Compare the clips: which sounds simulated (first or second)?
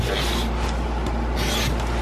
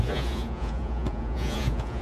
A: second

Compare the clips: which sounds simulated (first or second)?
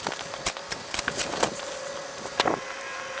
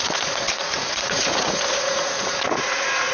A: second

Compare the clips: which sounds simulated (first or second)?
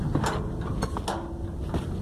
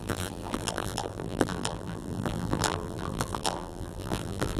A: second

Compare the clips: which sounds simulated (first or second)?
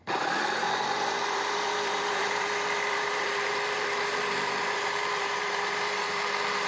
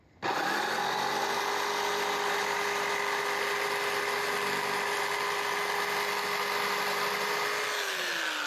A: first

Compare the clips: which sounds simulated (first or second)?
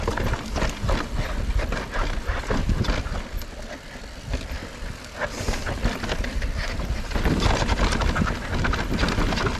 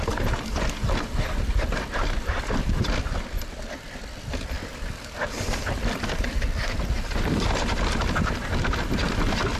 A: second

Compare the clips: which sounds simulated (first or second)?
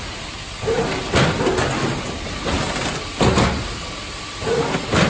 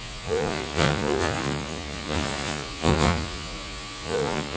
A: second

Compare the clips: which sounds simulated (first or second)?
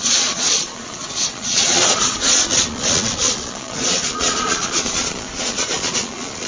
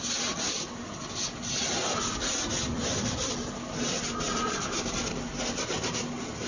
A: first